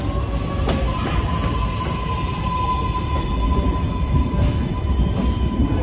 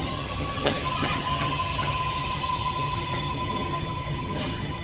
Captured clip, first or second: first